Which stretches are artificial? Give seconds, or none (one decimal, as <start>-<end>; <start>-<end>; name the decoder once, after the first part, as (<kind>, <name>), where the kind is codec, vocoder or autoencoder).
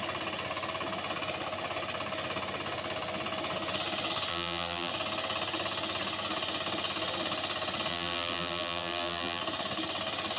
4.3-4.9 (vocoder, BigVGAN v2); 7.9-9.4